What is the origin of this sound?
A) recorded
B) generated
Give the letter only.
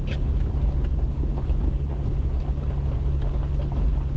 A